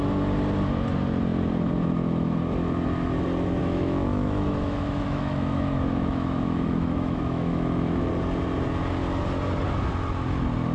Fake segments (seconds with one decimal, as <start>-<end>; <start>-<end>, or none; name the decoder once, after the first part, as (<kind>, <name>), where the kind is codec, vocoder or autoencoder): 3.6-8.1 (autoencoder, DAC-VAE)